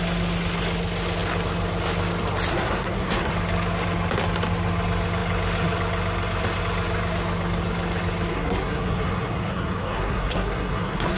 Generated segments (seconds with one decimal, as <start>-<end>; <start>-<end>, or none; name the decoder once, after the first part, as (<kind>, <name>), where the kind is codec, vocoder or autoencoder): 2.5-3.3 (codec, SNAC); 8.3-11.2